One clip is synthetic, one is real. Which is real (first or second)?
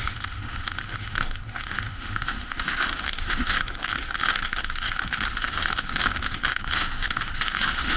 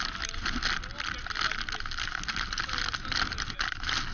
second